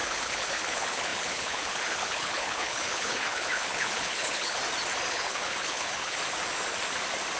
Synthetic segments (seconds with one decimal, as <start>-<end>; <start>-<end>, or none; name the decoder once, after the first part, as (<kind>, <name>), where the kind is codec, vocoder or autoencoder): 0.0-4.6 (codec, HILCodec); 5.1-6.2